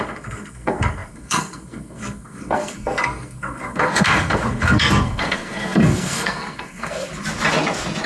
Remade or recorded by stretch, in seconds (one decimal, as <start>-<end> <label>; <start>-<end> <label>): 0.0-7.1 remade; 7.1-8.1 recorded